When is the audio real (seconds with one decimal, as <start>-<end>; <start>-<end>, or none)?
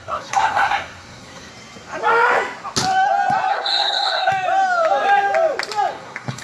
1.5-3.5; 4.3-5.9